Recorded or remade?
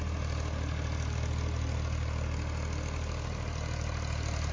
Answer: recorded